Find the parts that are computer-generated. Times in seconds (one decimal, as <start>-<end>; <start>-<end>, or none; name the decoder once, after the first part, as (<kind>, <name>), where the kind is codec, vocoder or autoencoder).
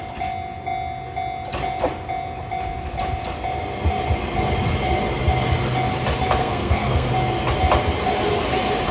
6.4-7.1 (codec, SNAC)